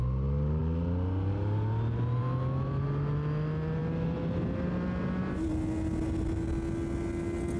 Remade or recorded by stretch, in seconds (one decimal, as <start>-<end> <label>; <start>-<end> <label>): 0.0-7.6 recorded